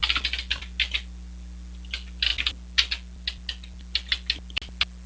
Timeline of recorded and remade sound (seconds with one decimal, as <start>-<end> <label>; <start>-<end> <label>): 0.0-5.1 recorded